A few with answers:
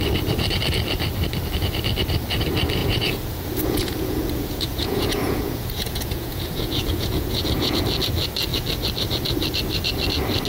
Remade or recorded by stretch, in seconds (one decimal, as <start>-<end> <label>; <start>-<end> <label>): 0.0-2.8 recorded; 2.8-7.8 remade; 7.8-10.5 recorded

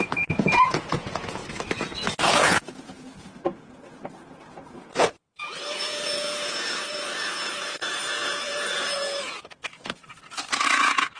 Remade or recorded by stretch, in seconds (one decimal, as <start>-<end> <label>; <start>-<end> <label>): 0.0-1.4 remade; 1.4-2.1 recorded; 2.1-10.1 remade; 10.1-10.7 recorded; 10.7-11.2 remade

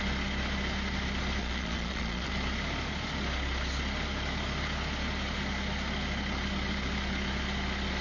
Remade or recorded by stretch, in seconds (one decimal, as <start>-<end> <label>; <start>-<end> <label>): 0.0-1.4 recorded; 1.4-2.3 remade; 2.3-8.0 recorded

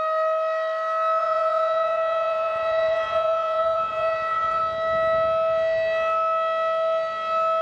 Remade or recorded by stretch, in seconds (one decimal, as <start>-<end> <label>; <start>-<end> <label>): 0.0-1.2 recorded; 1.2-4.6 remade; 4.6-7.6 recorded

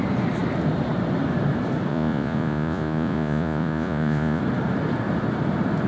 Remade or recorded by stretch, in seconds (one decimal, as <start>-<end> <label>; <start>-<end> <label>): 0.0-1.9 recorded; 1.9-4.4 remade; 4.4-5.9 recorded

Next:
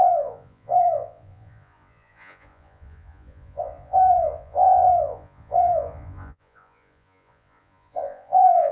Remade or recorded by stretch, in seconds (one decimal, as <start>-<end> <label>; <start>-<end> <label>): 0.0-8.7 remade

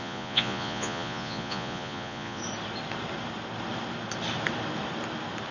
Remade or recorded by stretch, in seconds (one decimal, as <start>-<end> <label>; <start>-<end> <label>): 0.0-2.4 remade; 2.4-5.5 recorded

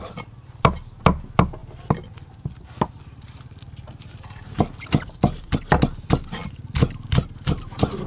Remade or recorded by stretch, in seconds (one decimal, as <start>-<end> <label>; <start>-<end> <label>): 0.0-8.1 recorded